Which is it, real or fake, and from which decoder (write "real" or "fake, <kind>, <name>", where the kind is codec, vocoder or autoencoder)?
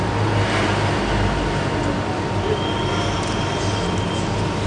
real